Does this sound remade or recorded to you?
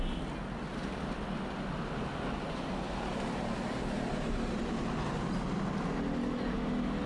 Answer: recorded